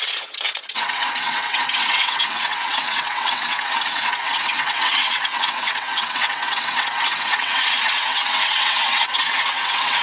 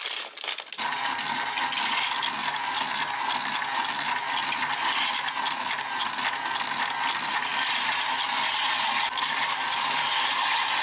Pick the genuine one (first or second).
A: second